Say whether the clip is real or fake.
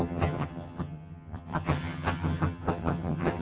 fake